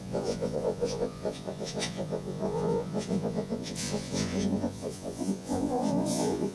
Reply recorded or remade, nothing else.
remade